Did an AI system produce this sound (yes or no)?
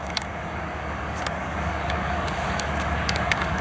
yes